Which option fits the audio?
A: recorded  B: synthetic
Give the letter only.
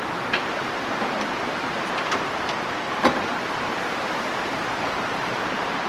B